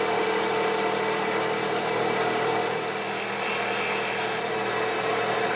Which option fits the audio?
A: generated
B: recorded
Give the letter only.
B